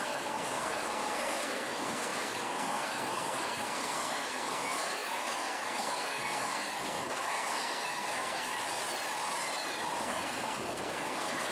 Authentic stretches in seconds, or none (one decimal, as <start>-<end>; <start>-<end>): 8.5-10.0